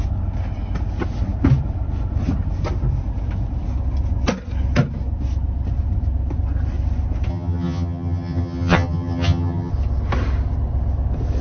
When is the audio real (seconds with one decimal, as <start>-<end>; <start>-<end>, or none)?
0.0-7.3; 9.7-11.4